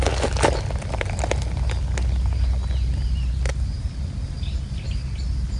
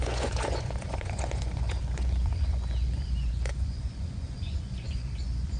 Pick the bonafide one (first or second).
first